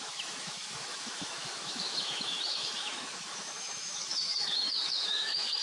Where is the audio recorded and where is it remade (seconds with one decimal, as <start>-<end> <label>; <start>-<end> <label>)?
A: 0.0-5.6 remade